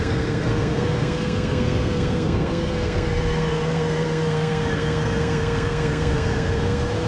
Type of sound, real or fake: fake